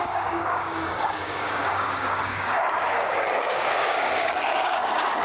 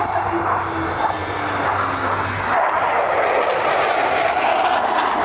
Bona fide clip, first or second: second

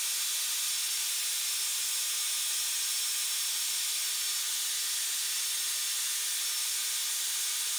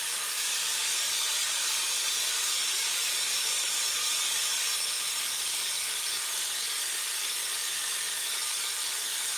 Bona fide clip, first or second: first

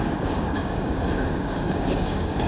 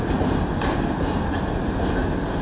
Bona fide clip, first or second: second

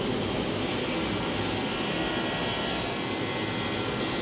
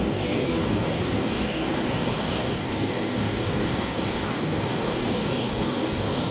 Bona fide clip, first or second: first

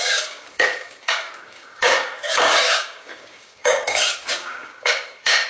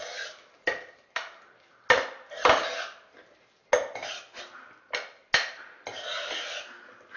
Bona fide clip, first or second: second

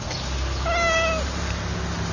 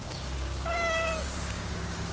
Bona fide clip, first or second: first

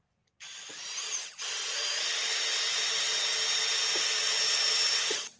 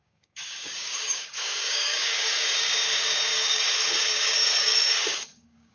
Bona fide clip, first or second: first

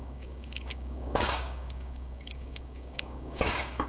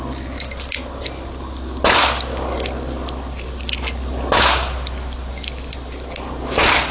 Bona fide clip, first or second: second